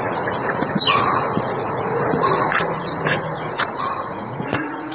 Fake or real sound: fake